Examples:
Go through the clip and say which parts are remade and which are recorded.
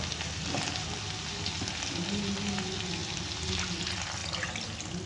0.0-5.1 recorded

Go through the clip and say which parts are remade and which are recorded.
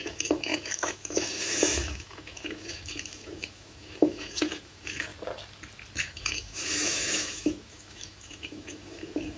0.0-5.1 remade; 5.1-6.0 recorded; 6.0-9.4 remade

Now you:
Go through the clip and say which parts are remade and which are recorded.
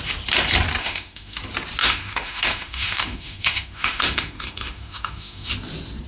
0.0-0.8 recorded; 0.8-1.4 remade; 1.4-1.8 recorded; 1.8-5.5 remade; 5.5-6.1 recorded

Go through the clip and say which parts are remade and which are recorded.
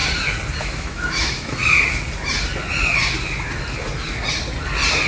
0.0-0.6 recorded; 0.6-1.6 remade; 1.6-5.1 recorded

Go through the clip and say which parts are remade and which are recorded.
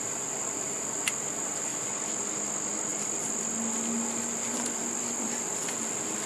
0.0-6.3 recorded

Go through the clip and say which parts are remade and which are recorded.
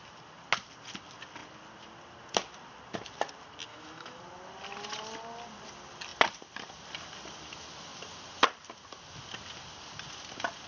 0.0-3.7 recorded; 3.7-4.2 remade; 4.2-10.7 recorded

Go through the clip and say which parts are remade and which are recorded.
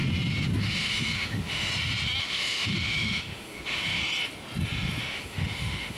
0.0-0.6 recorded; 0.6-1.7 remade; 1.7-2.2 recorded; 2.2-4.0 remade; 4.0-5.0 recorded; 5.0-6.0 remade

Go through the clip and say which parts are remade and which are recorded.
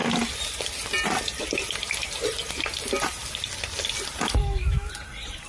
0.0-4.4 recorded; 4.4-4.9 remade; 4.9-5.5 recorded